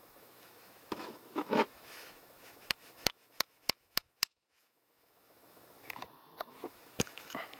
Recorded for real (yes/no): no